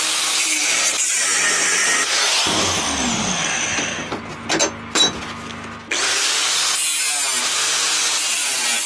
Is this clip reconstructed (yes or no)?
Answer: no